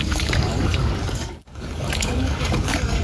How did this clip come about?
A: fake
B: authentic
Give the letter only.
A